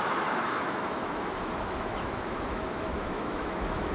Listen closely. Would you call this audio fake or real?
fake